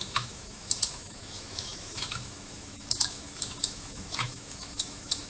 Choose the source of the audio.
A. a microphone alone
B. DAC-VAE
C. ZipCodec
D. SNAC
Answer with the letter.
B